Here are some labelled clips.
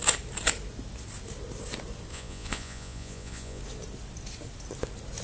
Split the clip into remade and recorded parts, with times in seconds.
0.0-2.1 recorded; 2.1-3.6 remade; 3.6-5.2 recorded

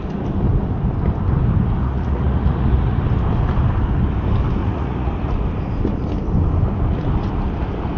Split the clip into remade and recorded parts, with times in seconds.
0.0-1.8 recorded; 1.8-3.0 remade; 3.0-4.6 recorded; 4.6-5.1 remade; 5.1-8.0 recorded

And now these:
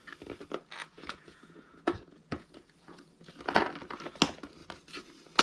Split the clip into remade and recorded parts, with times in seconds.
0.0-0.8 recorded; 0.8-3.3 remade; 3.3-5.4 recorded